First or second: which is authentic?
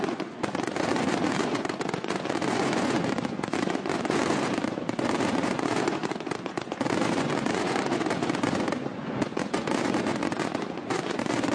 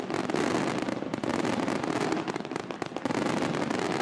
second